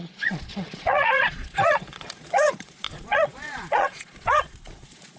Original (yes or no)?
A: no